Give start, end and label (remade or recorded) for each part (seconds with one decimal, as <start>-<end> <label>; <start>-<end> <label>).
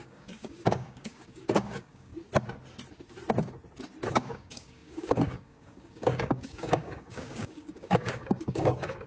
0.0-2.1 remade; 2.1-4.1 recorded; 4.1-9.1 remade